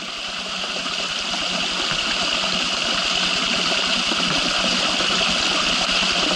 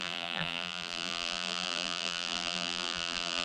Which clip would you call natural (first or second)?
first